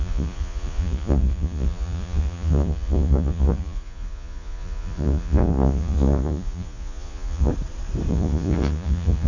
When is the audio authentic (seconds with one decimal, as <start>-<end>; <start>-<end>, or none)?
7.5-8.1